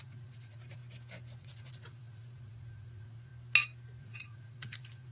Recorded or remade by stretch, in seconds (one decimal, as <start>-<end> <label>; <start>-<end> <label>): 0.0-0.8 remade; 0.8-1.4 recorded; 1.4-3.3 remade; 3.3-4.0 recorded; 4.0-5.1 remade